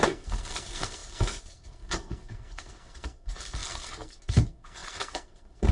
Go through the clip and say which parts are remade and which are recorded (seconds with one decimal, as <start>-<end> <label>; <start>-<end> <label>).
0.0-5.7 remade